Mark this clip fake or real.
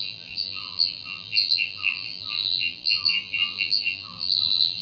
fake